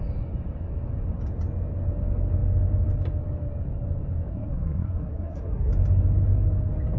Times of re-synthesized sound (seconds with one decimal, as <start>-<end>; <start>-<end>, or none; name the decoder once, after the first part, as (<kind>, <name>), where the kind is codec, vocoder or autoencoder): 4.3-5.7 (codec, SNAC)